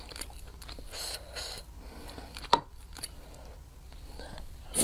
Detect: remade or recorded recorded